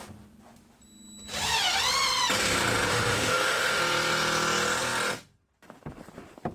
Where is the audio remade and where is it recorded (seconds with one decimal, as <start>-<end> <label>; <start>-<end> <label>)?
0.0-2.9 recorded; 2.9-3.8 remade; 3.8-6.5 recorded